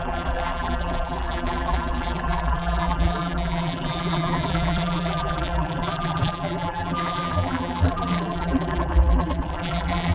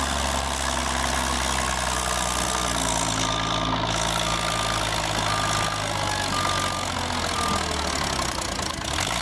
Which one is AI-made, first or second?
first